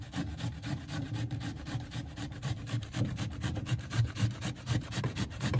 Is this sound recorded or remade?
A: remade